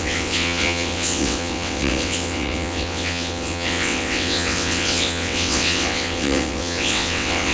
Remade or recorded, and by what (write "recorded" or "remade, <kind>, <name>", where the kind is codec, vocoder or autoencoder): remade, vocoder, WaveNeXt